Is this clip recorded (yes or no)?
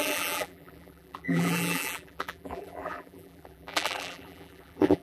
no